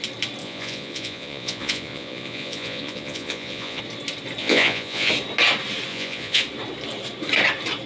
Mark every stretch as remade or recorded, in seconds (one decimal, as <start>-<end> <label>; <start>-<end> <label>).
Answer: 0.0-0.4 recorded; 0.4-3.8 remade; 3.8-4.4 recorded; 4.4-5.1 remade; 5.1-5.9 recorded; 5.9-6.4 remade; 6.4-7.9 recorded